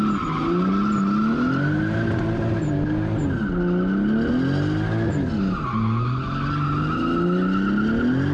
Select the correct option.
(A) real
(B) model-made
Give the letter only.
A